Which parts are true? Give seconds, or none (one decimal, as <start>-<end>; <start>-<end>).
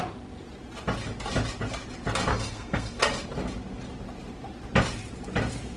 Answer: 0.0-2.3; 3.0-5.8